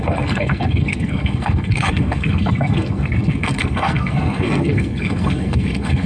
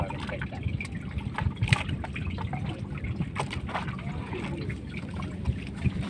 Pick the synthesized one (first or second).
first